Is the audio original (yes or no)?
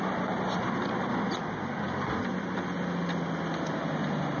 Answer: yes